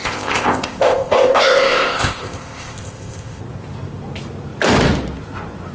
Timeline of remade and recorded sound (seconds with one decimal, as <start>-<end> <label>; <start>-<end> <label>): 0.0-3.4 remade; 3.4-5.7 recorded